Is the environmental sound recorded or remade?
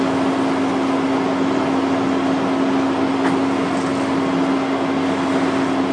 recorded